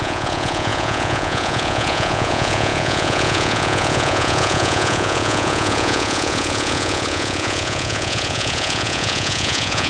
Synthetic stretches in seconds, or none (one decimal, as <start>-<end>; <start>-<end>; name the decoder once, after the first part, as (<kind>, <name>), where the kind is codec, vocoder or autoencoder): 0.0-9.9 (vocoder, Vocos)